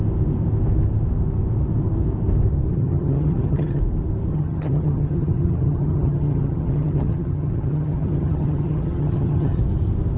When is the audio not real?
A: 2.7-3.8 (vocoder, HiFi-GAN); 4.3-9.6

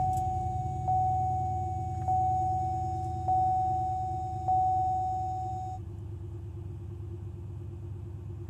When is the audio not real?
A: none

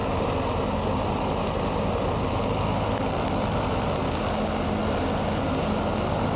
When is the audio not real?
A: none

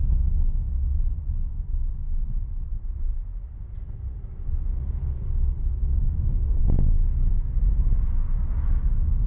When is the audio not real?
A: 4.7-5.3 (codec, SNAC); 5.9-6.6